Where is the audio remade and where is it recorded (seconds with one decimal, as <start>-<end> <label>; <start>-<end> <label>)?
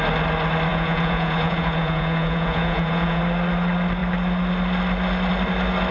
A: 0.0-0.7 recorded; 0.7-3.2 remade; 3.2-5.9 recorded